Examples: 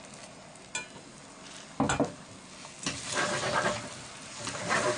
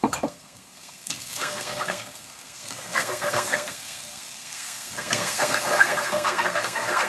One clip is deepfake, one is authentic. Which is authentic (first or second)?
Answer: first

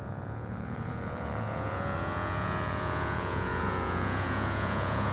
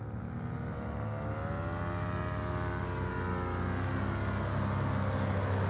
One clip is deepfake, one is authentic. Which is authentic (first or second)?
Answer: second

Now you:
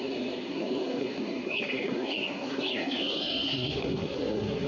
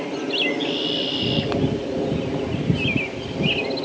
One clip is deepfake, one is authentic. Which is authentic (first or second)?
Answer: second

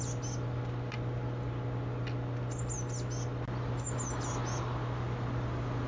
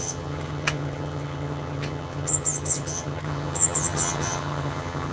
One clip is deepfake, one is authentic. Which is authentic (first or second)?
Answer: first